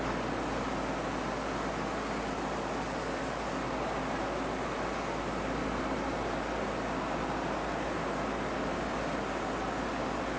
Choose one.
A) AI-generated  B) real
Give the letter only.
B